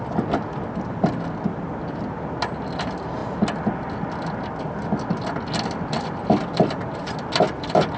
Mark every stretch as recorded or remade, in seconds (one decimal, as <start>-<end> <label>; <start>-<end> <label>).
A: 0.0-8.0 recorded